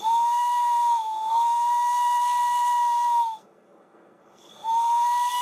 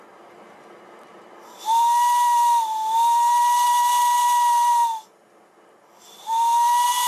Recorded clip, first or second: second